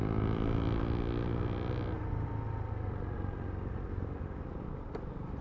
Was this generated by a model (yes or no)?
no